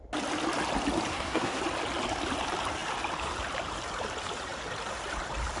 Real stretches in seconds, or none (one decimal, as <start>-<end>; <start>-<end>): 0.0-1.1; 1.6-5.6